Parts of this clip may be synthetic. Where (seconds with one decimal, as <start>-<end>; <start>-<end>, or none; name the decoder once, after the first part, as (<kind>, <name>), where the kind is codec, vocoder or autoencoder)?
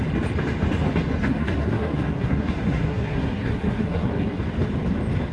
1.2-4.4 (codec, SNAC)